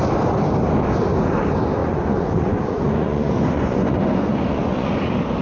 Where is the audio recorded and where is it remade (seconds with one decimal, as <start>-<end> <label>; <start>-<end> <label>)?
0.0-1.8 recorded; 1.8-5.0 remade; 5.0-5.4 recorded